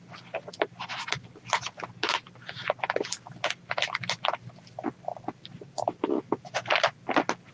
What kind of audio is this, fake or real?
real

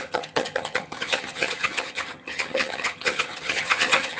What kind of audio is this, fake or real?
fake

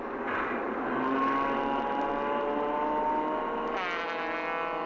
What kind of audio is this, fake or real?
real